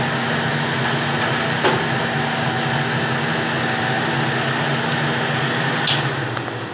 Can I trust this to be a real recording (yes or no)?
yes